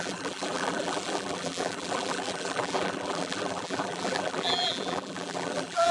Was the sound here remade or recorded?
remade